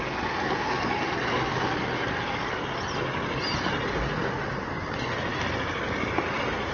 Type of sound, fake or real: real